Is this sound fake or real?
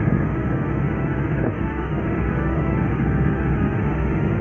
fake